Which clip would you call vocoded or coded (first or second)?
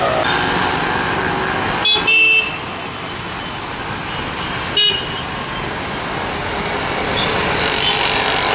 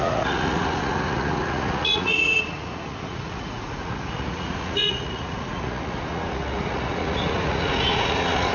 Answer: second